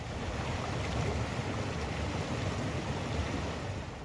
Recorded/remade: recorded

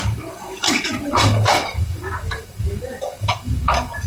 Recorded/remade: remade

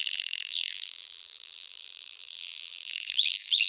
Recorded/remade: remade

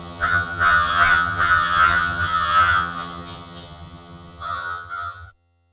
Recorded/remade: remade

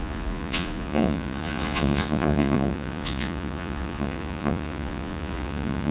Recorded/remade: remade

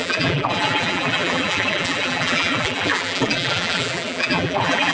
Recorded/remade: remade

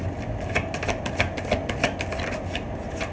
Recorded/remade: recorded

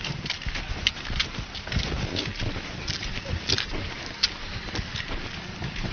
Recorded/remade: recorded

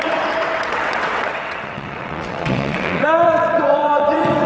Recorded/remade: remade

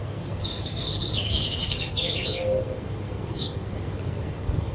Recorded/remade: remade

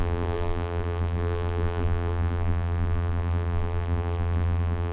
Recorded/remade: remade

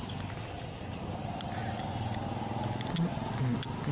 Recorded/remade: recorded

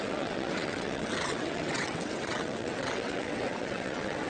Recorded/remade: remade